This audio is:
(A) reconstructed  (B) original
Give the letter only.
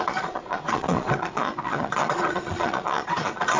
A